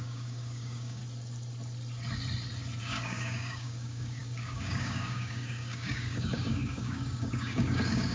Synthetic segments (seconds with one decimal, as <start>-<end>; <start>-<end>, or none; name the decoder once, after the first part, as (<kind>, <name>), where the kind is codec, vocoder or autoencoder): 0.0-1.0 (codec, DAC); 2.8-8.1